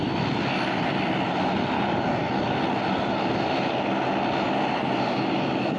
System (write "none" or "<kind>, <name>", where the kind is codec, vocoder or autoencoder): none